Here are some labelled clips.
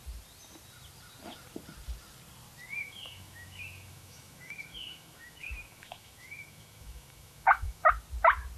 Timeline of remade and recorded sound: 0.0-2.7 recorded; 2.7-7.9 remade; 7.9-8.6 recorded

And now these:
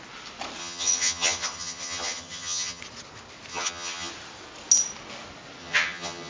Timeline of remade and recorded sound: 0.0-0.6 recorded; 0.6-2.8 remade; 2.8-3.5 recorded; 3.5-4.1 remade; 4.1-5.6 recorded; 5.6-6.3 remade

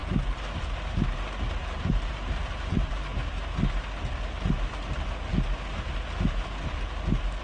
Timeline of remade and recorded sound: 0.0-1.6 recorded; 1.6-2.9 remade; 2.9-7.4 recorded